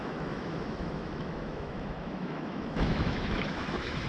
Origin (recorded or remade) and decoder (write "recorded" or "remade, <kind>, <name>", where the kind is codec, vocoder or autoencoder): remade, autoencoder, DAC-VAE